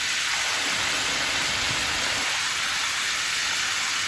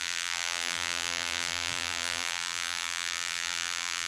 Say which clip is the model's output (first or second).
second